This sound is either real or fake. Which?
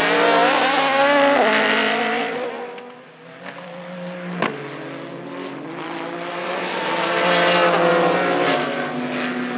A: real